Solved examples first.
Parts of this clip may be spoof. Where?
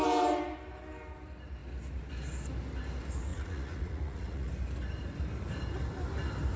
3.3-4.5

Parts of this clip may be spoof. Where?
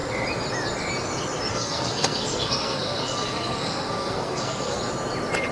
1.5-4.8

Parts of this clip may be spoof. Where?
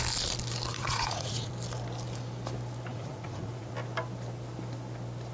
0.7-1.5; 2.9-3.7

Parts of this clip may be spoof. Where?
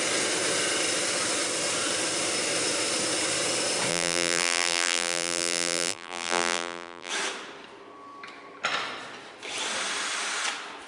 3.9-7.1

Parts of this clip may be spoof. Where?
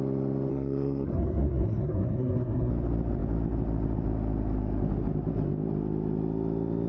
0.5-2.7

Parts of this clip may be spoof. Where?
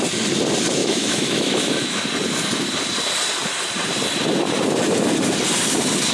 0.8-2.0